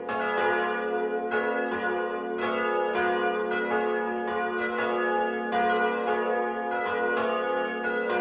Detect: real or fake real